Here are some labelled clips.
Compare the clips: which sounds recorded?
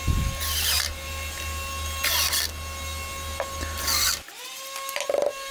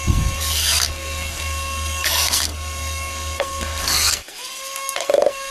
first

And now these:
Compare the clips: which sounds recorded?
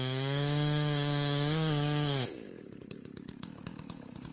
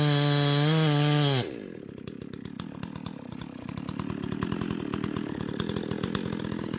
second